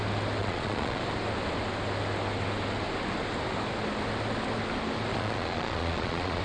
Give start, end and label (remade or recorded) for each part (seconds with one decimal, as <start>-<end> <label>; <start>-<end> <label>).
0.0-0.4 recorded; 0.4-1.0 remade; 1.0-5.1 recorded; 5.1-6.4 remade